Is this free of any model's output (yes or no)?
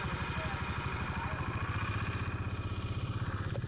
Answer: yes